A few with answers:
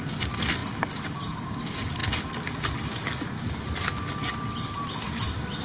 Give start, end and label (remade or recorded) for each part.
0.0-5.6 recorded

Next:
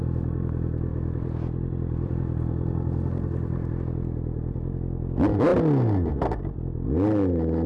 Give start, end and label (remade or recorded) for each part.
0.0-0.9 recorded; 0.9-3.8 remade; 3.8-7.7 recorded